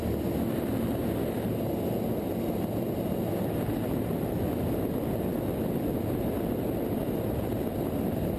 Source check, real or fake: real